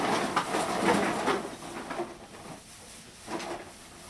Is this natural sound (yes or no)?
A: yes